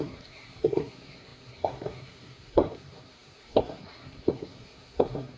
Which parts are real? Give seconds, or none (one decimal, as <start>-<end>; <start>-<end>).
none